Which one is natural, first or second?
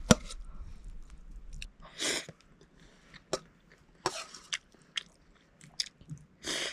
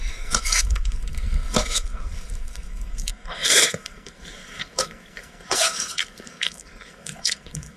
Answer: first